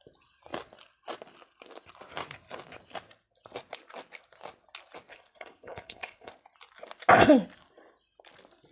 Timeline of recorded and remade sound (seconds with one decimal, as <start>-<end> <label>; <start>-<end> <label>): 0.0-5.1 recorded; 5.1-6.3 remade; 6.3-8.7 recorded